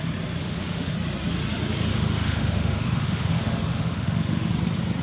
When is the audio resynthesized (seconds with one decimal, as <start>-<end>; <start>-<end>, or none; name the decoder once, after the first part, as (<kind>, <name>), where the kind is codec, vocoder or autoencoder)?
0.4-0.9 (autoencoder, DAC-VAE); 1.9-4.5